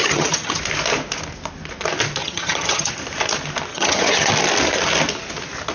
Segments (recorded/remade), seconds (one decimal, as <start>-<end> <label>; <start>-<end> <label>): 0.0-0.6 remade; 0.6-2.2 recorded; 2.2-2.9 remade; 2.9-3.7 recorded; 3.7-4.3 remade; 4.3-5.7 recorded